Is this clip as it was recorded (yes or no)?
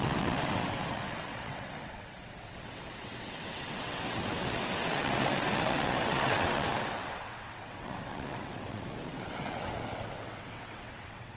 no